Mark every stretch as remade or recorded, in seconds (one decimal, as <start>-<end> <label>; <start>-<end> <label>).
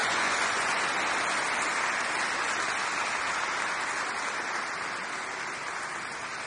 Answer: 0.0-0.8 remade; 0.8-6.5 recorded